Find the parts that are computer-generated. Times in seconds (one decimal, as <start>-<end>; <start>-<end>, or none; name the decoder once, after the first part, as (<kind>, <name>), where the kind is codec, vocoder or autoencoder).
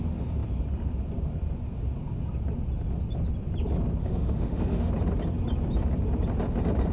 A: 4.0-4.9 (autoencoder, DAC-VAE)